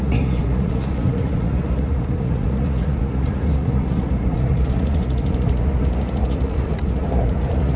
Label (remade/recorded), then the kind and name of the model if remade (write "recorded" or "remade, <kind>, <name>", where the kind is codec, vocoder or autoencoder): remade, vocoder, Vocos